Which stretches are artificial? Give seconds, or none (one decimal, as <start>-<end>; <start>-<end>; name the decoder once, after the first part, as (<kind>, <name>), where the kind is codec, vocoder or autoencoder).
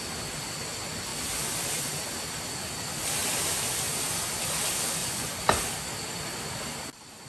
5.0-5.6 (vocoder, Vocos)